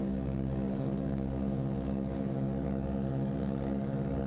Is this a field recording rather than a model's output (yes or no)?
no